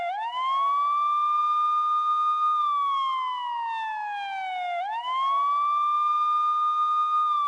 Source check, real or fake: real